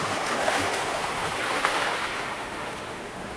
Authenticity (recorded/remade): remade